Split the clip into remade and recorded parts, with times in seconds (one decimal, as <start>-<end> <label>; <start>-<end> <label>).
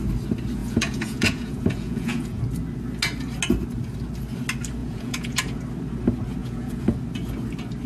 0.0-0.6 recorded; 0.6-2.4 remade; 2.4-4.8 recorded; 4.8-5.6 remade; 5.6-6.4 recorded; 6.4-6.9 remade; 6.9-7.9 recorded